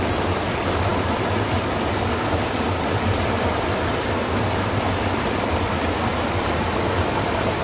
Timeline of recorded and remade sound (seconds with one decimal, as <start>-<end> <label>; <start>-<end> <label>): 0.0-0.9 recorded; 0.9-5.5 remade; 5.5-7.6 recorded